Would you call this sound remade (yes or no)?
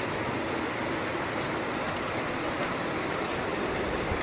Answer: no